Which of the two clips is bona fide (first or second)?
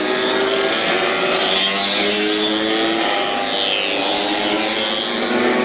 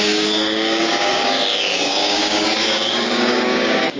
first